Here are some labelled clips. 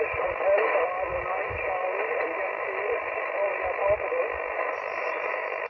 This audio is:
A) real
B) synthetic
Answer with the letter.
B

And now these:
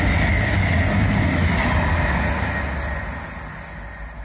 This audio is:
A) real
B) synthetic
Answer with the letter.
A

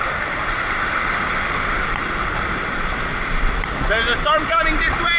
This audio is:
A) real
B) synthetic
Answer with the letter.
A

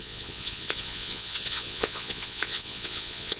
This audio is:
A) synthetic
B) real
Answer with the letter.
A